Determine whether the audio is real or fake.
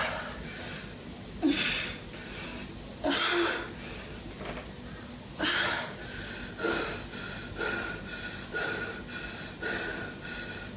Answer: real